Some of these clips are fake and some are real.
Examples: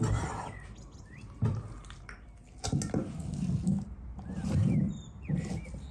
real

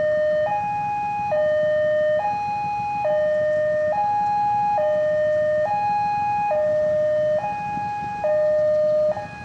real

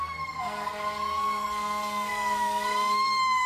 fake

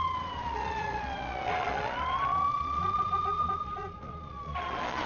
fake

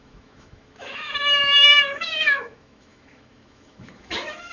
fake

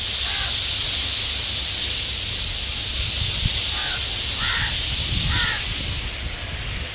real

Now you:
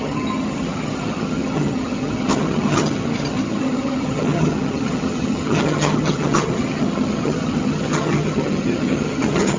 fake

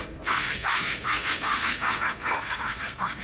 fake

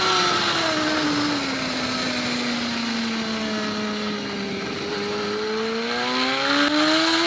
real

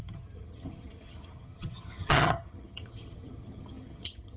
fake